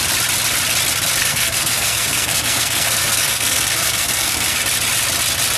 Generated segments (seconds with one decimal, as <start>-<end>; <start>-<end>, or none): 1.2-4.6